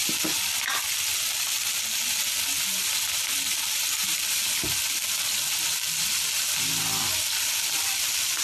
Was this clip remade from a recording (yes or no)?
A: no